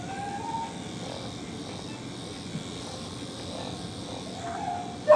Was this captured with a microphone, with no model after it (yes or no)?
yes